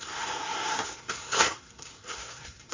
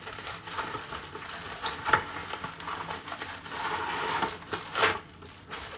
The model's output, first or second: first